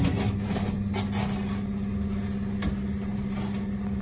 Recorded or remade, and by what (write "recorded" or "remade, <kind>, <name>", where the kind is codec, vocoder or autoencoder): recorded